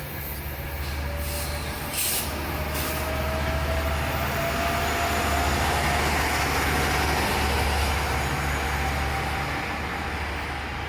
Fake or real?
real